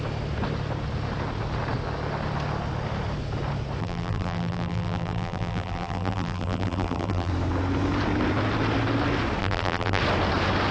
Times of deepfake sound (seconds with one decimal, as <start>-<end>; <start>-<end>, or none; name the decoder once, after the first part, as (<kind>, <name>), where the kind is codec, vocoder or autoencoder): 3.8-7.3 (vocoder, BigVGAN v2); 9.4-10.0